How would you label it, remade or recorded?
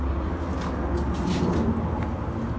recorded